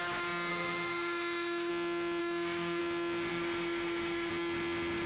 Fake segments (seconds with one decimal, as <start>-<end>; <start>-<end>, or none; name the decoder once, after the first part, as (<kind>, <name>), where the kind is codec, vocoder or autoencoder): 0.5-1.7 (autoencoder, DAC-VAE); 2.2-2.8; 3.3-4.3